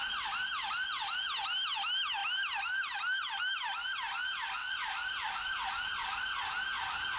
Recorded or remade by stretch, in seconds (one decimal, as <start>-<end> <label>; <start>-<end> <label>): 0.0-0.4 recorded; 0.4-1.2 remade; 1.2-4.6 recorded; 4.6-7.2 remade